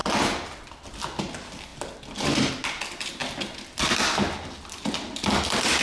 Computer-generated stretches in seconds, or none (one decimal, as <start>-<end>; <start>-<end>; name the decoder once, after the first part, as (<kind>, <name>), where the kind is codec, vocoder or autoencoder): none